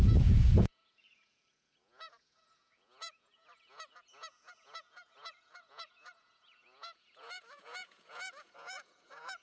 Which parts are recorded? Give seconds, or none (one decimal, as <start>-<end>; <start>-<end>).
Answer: none